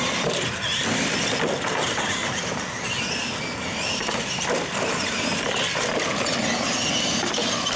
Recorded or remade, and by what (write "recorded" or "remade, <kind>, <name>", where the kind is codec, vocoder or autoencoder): recorded